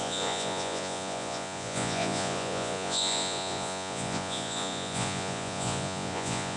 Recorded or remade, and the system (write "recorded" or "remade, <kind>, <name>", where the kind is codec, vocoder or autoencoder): remade, vocoder, Vocos